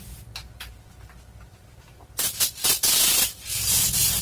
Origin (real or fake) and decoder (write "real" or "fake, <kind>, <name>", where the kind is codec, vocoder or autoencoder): real